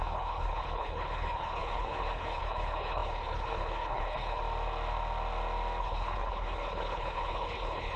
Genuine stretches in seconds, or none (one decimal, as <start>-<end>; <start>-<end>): 4.4-5.8